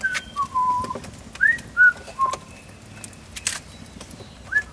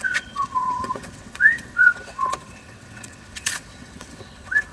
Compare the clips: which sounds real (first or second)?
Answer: first